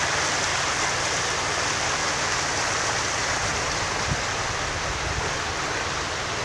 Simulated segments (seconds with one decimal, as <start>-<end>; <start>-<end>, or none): 0.0-0.5; 1.3-2.0; 3.0-3.5; 4.8-6.4